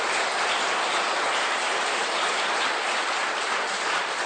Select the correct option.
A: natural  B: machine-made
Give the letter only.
A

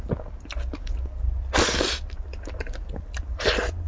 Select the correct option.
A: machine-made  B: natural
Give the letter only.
B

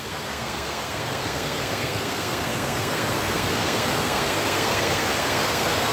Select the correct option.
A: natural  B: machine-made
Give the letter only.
B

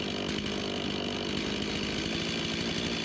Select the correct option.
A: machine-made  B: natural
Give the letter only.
B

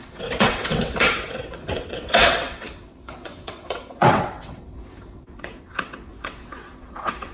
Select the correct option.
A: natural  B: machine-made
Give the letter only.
B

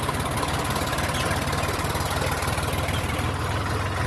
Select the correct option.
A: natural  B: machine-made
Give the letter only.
A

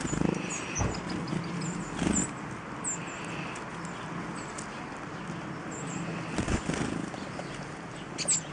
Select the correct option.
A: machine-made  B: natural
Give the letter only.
B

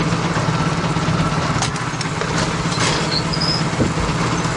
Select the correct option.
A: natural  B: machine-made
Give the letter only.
A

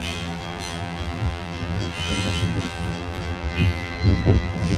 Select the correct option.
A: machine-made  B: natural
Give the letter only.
A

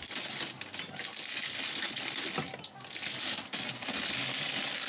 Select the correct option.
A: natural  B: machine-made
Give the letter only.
A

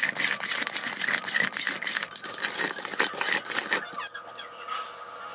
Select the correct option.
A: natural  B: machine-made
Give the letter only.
A